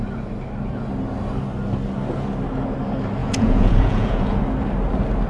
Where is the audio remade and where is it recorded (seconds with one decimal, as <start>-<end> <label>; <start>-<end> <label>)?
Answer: 0.0-3.2 recorded; 3.2-4.4 remade; 4.4-5.3 recorded